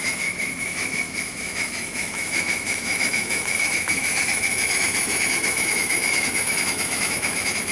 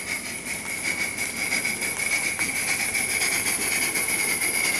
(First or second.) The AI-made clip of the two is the first